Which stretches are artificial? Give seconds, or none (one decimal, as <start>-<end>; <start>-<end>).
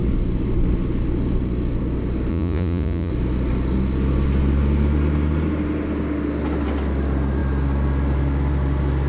2.3-3.1